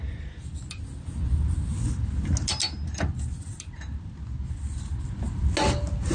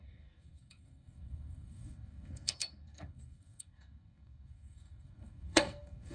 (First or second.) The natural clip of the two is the first